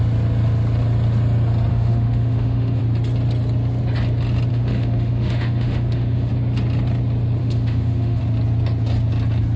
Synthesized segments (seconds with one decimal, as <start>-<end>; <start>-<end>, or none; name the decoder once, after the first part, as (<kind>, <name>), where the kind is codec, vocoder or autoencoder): 1.7-2.8 (autoencoder, DAC-VAE); 4.5-6.3; 7.4-8.2